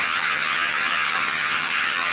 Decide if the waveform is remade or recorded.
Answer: remade